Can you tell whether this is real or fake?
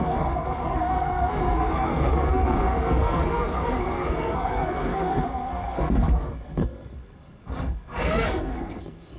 fake